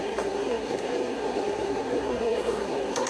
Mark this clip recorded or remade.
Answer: remade